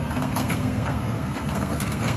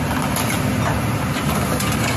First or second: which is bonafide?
second